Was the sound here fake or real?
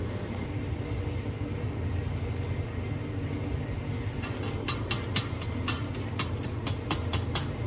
real